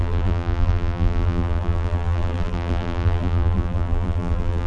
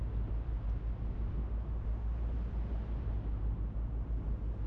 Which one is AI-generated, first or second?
first